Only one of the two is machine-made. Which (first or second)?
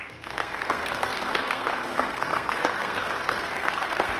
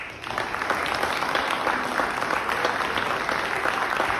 first